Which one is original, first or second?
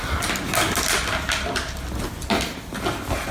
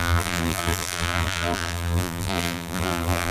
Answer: first